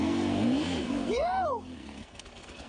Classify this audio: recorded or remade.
remade